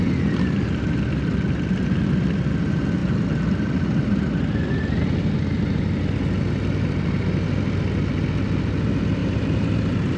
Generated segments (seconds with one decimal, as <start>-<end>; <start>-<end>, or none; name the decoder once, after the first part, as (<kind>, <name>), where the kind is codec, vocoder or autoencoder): 9.2-10.2 (vocoder, BigVGAN v2)